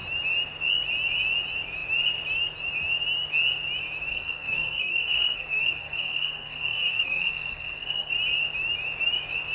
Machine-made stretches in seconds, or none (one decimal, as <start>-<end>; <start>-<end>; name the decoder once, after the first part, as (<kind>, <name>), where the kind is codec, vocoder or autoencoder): 4.1-8.1 (codec, SNAC)